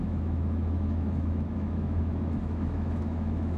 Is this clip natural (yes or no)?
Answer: no